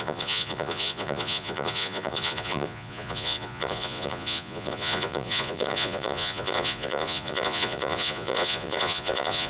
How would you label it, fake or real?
fake